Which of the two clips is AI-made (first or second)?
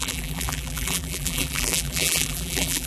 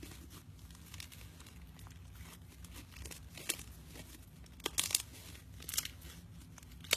first